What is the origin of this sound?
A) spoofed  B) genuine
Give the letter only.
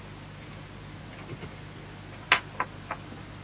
B